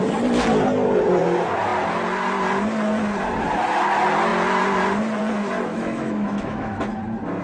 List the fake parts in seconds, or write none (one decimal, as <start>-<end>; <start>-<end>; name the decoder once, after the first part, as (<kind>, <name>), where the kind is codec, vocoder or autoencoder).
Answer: 5.7-7.0 (autoencoder, DAC-VAE)

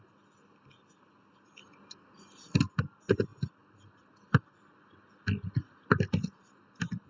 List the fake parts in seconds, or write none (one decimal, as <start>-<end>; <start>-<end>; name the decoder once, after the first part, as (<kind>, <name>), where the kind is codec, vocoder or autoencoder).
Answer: none